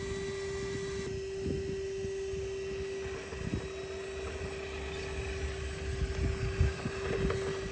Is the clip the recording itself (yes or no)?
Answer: yes